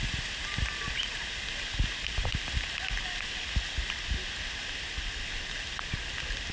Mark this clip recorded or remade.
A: recorded